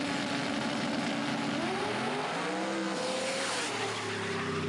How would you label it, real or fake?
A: real